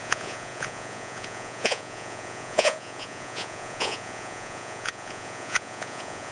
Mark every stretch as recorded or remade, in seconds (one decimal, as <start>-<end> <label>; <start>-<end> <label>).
0.0-6.3 remade